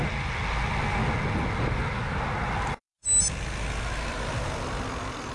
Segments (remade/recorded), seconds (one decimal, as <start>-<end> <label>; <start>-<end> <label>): 0.0-5.3 recorded